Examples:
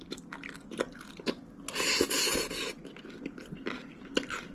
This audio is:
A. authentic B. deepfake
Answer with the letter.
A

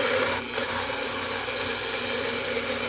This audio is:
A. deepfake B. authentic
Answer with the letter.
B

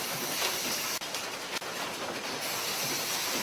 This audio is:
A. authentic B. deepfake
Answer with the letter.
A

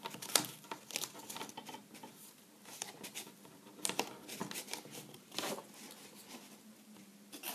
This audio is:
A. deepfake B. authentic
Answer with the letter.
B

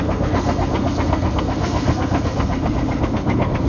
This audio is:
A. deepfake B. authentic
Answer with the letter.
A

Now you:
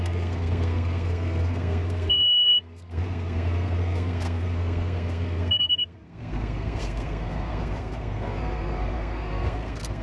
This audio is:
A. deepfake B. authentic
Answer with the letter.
A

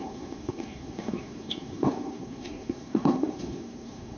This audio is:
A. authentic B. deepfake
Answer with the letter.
B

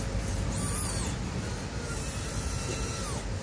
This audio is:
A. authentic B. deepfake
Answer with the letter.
A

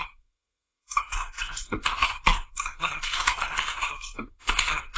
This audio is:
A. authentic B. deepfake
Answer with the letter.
B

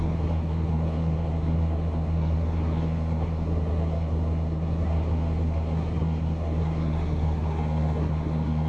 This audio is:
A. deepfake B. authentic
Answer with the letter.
A